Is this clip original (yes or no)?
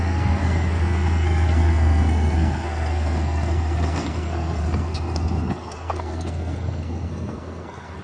no